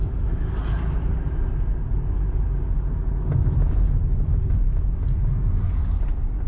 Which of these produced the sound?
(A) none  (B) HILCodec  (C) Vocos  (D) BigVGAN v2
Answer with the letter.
A